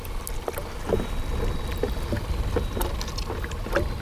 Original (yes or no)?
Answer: yes